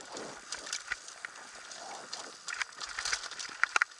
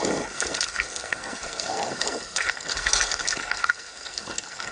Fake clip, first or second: second